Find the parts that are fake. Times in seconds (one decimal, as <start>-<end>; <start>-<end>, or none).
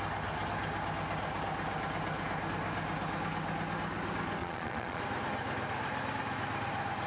4.4-5.0